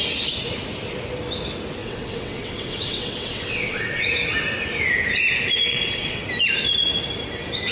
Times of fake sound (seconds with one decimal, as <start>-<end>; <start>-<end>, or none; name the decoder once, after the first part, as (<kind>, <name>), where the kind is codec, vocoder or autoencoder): 1.8-4.0 (vocoder, WaveNeXt); 5.7-6.2

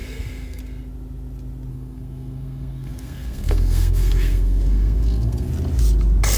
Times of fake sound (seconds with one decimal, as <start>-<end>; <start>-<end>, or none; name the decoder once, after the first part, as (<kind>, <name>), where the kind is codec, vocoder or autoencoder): 0.0-0.6 (codec, SNAC); 1.7-5.5